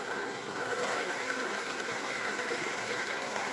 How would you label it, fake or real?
fake